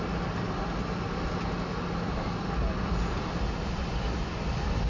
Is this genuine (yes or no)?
yes